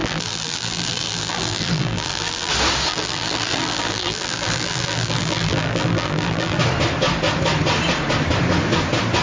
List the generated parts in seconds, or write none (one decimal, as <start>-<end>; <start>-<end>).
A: 0.0-2.5; 2.9-6.6